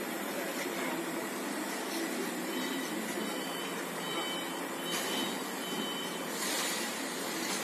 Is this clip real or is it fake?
fake